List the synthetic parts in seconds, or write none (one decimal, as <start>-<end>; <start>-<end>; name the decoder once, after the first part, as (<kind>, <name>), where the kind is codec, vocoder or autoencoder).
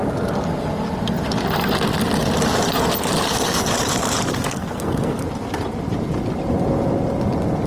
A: 4.3-5.2 (codec, SNAC)